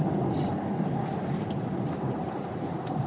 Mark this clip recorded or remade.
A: recorded